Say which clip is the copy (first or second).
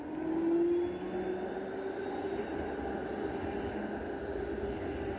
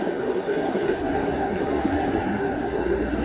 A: second